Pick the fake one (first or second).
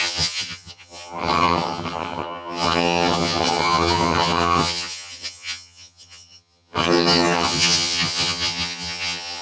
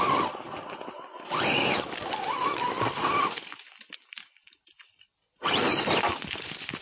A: first